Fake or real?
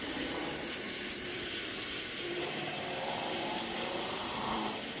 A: fake